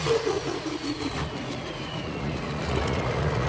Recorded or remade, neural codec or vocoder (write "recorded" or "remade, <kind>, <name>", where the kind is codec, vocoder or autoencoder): remade, vocoder, Vocos